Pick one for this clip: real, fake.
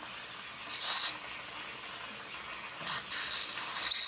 real